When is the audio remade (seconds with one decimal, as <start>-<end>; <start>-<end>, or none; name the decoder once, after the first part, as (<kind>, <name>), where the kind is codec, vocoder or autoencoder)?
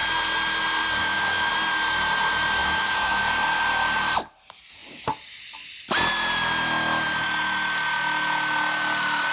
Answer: 1.0-1.5 (autoencoder, DAC-VAE); 2.6-3.2